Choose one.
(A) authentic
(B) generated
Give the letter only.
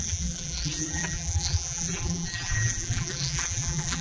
B